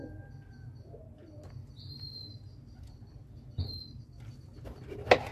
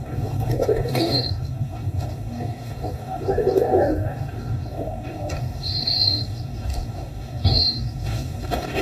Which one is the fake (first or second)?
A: second